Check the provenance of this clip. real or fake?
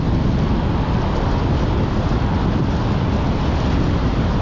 real